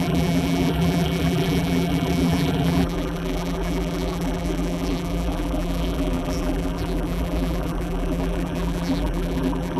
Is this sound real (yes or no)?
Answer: no